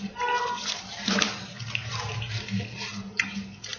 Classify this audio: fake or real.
fake